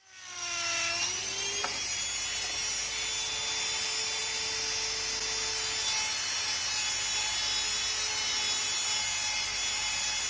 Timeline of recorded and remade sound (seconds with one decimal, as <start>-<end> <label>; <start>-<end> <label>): 0.0-10.3 recorded